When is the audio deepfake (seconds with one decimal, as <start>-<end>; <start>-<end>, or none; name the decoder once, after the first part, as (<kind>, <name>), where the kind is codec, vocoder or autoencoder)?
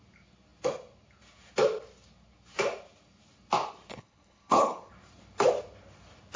3.9-4.9 (codec, HILCodec)